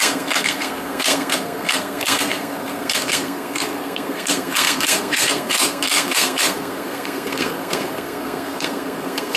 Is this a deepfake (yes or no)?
yes